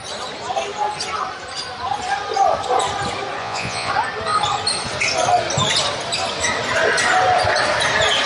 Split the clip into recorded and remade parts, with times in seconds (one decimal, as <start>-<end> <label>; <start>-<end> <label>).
0.0-3.4 recorded; 3.4-3.9 remade; 3.9-8.3 recorded